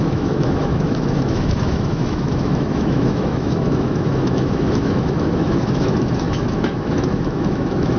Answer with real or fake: fake